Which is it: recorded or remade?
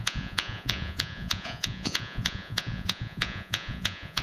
remade